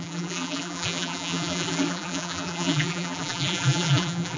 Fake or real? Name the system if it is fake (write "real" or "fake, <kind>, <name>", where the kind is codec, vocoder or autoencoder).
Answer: fake, vocoder, BigVGAN v2